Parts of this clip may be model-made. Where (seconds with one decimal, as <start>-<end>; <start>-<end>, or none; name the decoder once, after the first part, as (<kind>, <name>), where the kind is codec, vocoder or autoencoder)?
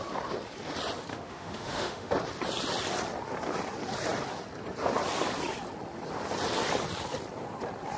1.1-2.1 (autoencoder, DAC-VAE)